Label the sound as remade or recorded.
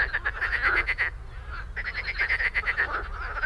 recorded